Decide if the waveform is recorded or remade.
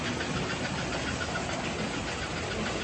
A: recorded